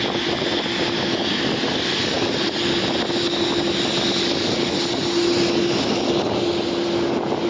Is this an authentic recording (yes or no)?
yes